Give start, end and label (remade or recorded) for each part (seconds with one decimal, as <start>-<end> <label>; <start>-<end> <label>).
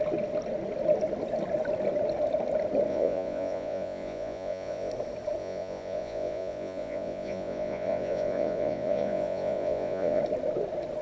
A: 0.0-2.9 recorded; 2.9-4.9 remade; 4.9-5.4 recorded; 5.4-10.2 remade; 10.2-11.0 recorded